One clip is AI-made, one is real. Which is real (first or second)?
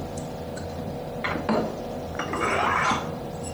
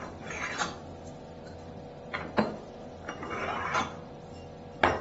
second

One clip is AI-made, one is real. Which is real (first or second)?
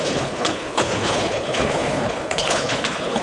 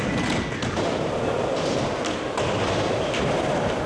second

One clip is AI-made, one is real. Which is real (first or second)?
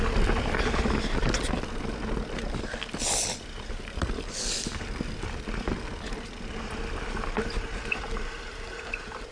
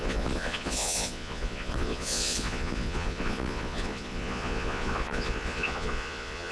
first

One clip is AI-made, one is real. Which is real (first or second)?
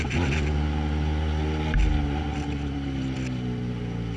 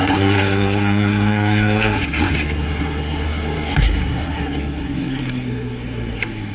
first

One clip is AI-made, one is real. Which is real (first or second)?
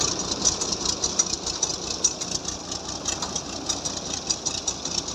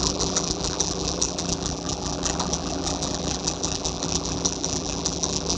first